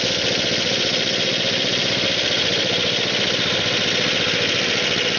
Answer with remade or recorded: recorded